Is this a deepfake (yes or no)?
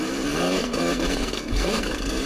yes